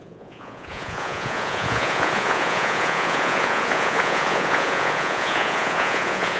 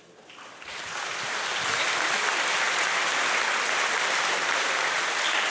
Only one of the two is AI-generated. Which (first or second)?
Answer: first